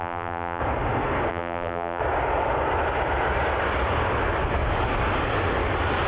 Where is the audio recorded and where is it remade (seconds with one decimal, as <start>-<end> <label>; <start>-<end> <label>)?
0.0-0.6 remade; 0.6-1.3 recorded; 1.3-2.0 remade; 2.0-6.1 recorded